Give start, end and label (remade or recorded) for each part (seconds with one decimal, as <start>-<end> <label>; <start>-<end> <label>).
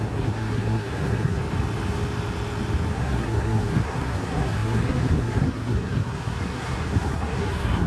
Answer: 0.0-1.4 remade; 1.4-2.9 recorded; 2.9-7.9 remade